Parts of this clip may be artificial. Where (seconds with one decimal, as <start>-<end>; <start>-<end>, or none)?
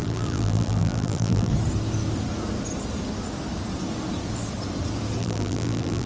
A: 0.0-1.5; 5.2-6.1